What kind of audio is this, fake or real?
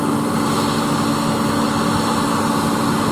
real